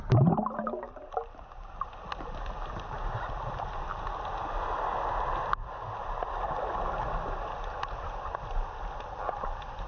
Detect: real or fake real